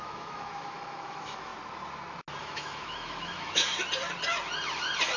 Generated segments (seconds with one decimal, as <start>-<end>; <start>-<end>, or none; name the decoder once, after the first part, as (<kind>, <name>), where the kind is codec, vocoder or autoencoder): 0.0-1.5 (autoencoder, DAC-VAE); 2.4-3.6